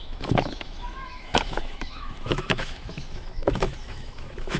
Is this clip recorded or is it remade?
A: remade